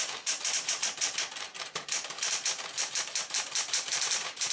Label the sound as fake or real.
fake